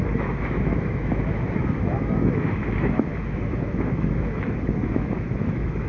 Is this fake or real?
fake